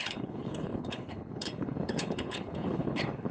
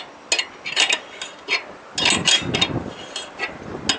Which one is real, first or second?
second